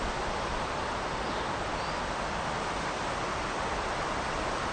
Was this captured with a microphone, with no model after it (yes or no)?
no